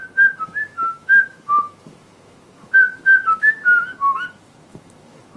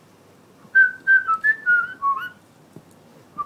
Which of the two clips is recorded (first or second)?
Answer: second